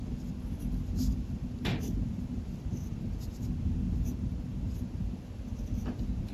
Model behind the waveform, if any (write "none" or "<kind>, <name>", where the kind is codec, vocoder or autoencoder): none